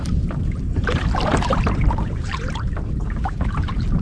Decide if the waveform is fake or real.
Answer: fake